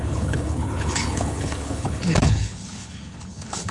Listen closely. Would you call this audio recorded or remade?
remade